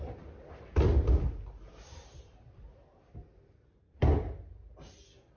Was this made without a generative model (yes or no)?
yes